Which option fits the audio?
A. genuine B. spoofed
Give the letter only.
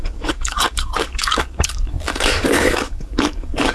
B